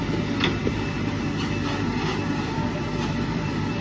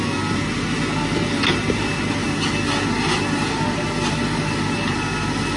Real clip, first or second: second